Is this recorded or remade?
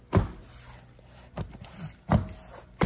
recorded